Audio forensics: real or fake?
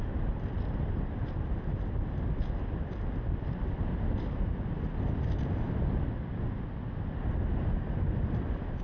real